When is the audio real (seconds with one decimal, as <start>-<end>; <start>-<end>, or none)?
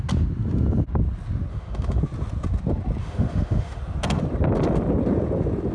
0.0-1.5; 2.0-3.0; 3.8-5.7